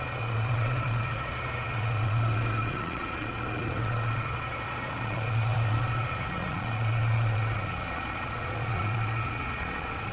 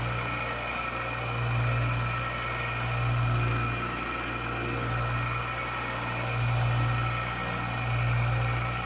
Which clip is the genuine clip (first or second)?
second